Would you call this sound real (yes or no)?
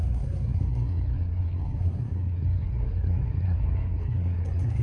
no